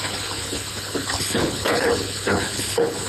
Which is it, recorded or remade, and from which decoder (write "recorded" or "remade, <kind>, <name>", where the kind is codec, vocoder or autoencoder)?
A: remade, codec, HILCodec